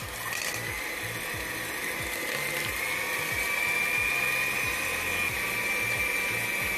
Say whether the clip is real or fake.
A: real